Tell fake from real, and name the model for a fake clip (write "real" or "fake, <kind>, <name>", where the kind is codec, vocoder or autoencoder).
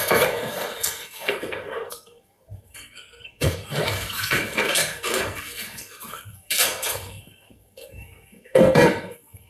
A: fake, codec, SNAC